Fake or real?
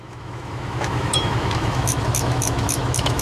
fake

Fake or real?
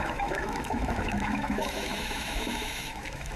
fake